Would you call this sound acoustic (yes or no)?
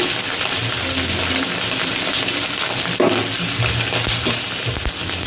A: yes